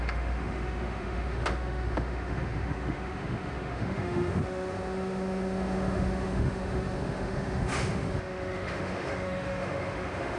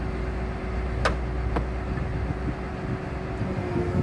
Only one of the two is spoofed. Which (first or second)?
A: first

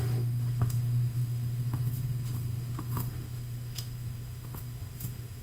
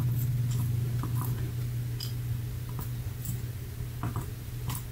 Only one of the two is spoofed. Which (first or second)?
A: first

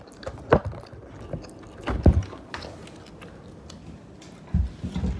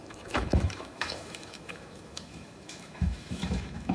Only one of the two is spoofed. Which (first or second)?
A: second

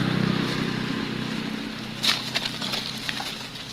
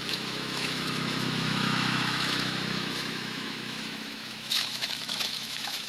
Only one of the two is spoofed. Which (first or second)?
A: second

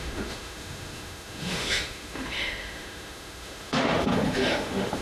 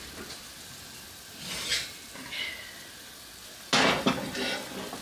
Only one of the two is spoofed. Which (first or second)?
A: first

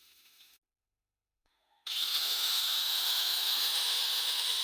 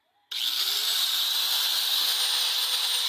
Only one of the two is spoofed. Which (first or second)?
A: first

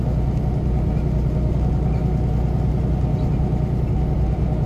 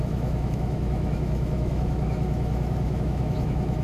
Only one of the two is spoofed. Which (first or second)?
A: second